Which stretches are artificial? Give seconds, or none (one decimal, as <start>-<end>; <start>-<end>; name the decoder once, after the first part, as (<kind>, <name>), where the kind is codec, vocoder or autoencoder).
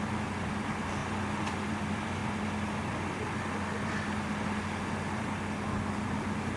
0.0-1.0 (vocoder, BigVGAN v2); 1.7-2.2